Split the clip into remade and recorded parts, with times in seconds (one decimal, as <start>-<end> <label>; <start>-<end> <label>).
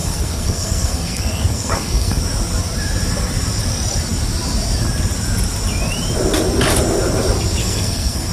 0.0-2.2 remade; 2.2-7.6 recorded; 7.6-8.3 remade